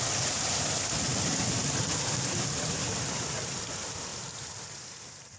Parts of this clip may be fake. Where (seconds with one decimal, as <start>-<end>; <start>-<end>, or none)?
0.0-5.4